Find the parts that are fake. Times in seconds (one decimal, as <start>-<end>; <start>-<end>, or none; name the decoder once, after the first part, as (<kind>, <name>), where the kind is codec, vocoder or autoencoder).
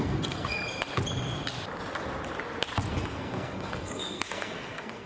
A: 0.0-0.6 (codec, SNAC); 2.9-5.1